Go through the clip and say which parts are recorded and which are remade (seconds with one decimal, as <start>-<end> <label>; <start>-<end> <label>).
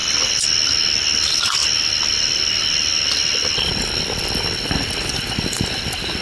0.0-6.2 recorded